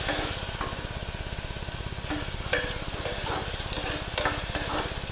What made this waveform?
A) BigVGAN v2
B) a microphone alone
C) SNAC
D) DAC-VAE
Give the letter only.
B